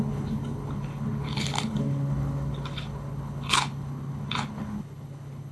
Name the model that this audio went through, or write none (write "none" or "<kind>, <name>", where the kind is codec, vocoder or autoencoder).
codec, HILCodec